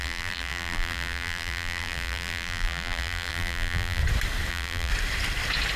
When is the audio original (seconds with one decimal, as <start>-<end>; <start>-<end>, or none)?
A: 4.0-4.5; 4.9-5.8